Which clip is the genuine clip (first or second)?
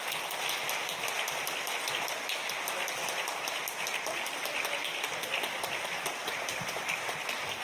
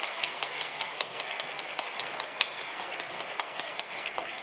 first